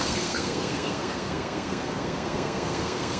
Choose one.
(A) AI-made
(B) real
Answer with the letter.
A